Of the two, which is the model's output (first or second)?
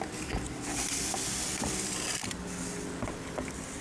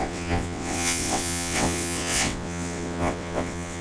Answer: second